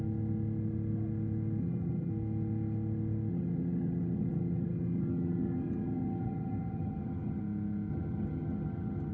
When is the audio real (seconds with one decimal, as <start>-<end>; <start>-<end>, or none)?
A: 0.0-1.6; 2.1-3.3; 7.4-7.9